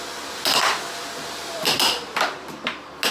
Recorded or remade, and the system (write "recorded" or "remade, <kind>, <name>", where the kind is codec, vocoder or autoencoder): recorded